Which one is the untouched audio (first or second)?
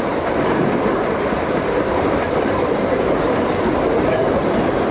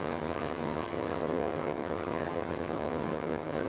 first